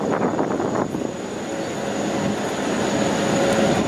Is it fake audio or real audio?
real